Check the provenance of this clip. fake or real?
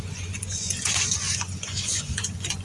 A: fake